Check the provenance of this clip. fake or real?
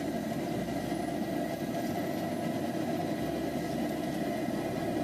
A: real